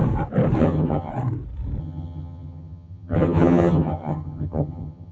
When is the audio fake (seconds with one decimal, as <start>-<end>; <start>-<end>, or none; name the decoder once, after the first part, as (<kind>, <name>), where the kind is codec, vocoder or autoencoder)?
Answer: 0.6-1.1 (vocoder, HiFi-GAN); 1.8-5.1